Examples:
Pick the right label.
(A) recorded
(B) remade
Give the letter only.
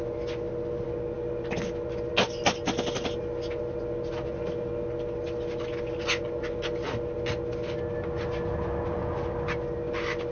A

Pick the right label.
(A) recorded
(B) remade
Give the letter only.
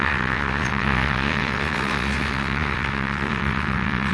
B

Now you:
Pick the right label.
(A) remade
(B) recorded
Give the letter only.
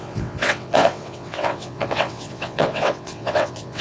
A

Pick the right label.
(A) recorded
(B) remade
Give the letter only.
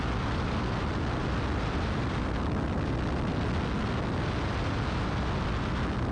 A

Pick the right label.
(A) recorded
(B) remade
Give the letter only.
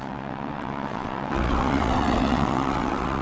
B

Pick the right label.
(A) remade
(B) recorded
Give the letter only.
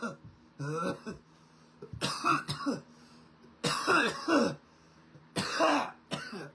B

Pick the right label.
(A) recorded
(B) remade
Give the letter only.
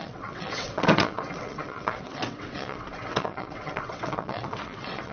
B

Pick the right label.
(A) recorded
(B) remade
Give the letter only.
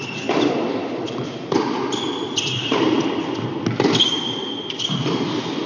A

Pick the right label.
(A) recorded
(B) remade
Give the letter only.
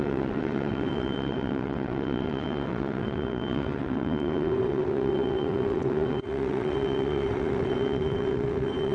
B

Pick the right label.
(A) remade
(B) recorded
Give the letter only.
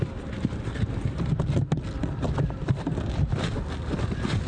B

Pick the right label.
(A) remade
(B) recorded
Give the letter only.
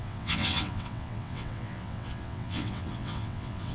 A